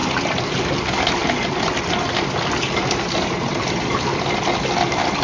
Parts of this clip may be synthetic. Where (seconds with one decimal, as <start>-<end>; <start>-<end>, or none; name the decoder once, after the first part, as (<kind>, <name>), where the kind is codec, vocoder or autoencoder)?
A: none